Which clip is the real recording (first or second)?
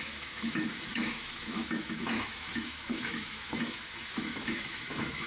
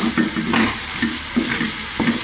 second